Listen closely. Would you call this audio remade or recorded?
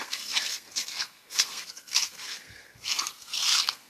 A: remade